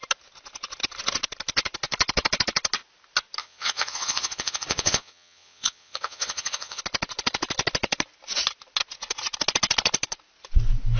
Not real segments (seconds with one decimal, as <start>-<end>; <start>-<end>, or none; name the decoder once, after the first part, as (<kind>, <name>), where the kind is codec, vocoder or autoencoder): 3.4-6.8 (vocoder, WaveNeXt)